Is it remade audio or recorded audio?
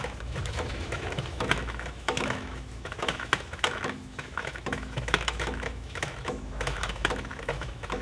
remade